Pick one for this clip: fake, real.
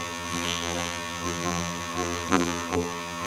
fake